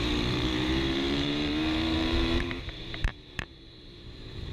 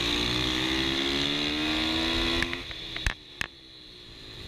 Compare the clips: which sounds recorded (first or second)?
second